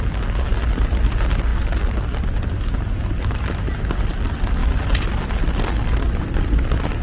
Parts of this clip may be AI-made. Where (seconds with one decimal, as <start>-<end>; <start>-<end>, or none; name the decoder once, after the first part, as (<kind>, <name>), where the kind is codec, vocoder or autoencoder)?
none